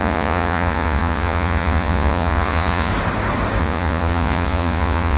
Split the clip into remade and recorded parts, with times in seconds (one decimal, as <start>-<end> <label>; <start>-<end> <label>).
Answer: 0.0-2.9 remade; 2.9-3.6 recorded; 3.6-5.2 remade